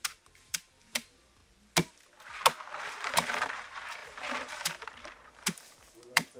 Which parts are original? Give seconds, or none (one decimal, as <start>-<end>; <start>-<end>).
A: 1.4-2.8

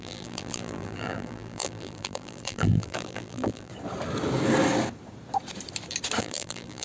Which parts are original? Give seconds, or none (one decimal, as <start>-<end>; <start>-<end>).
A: 3.7-6.2

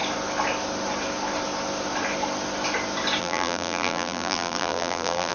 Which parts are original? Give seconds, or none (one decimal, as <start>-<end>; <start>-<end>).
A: 0.0-3.2